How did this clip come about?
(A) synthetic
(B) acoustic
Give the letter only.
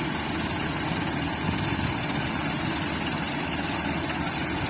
B